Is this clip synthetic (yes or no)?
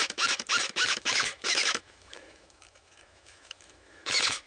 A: yes